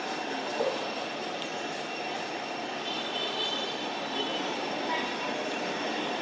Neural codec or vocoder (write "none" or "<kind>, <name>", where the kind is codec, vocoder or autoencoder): vocoder, BigVGAN v2